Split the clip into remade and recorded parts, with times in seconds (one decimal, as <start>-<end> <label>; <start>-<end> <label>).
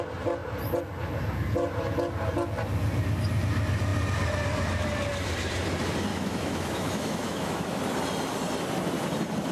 0.0-6.1 recorded; 6.1-7.8 remade; 7.8-9.5 recorded